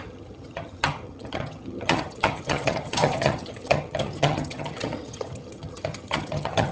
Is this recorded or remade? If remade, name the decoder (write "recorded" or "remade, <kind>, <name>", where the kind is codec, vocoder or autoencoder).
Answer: remade, vocoder, HiFi-GAN